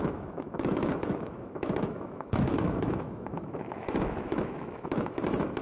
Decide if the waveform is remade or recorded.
remade